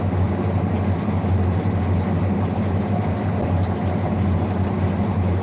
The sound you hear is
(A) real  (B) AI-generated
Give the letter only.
A